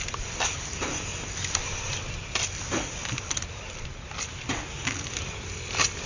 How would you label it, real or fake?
real